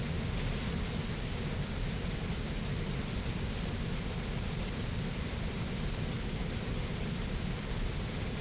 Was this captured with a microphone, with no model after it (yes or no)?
yes